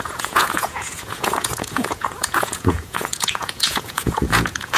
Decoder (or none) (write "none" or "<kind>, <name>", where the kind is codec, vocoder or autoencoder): vocoder, Vocos